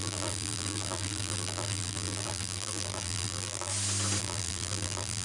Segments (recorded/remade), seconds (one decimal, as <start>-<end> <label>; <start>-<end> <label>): 0.0-3.7 remade; 3.7-4.2 recorded; 4.2-5.2 remade

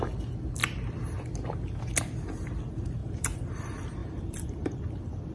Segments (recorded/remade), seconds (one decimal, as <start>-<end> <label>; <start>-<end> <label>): 0.0-3.0 recorded; 3.0-3.6 remade; 3.6-4.0 recorded; 4.0-4.8 remade; 4.8-5.3 recorded

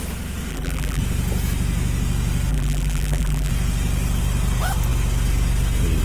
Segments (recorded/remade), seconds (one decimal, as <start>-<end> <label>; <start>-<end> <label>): 0.0-0.5 recorded; 0.5-1.0 remade; 1.0-2.5 recorded; 2.5-3.5 remade; 3.5-6.0 recorded

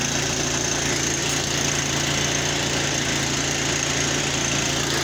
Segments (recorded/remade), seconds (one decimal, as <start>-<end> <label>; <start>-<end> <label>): 0.0-5.0 recorded

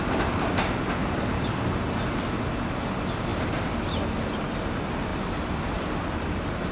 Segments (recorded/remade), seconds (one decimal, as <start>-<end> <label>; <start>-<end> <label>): 0.0-1.0 recorded; 1.0-1.8 remade; 1.8-5.1 recorded; 5.1-6.7 remade

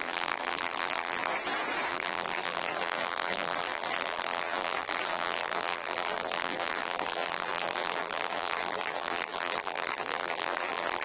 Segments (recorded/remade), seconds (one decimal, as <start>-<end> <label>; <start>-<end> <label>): 0.0-1.3 remade; 1.3-1.9 recorded; 1.9-11.0 remade